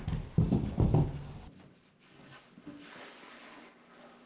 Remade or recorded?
recorded